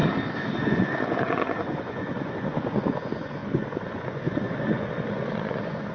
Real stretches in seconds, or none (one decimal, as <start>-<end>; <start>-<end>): 0.0-0.6